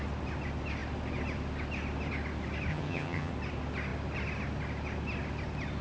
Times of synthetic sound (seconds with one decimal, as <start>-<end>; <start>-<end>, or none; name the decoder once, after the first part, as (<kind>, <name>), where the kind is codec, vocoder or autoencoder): 2.7-3.3 (vocoder, HiFi-GAN)